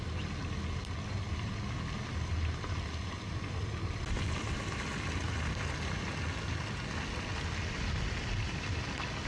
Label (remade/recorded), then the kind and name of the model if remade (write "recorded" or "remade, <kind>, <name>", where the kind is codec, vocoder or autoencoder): recorded